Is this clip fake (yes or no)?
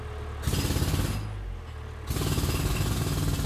no